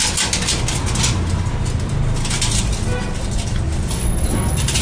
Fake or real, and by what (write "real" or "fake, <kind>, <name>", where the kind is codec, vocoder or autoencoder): real